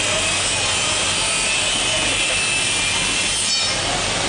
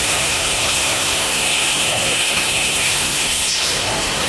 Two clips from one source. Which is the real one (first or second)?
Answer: first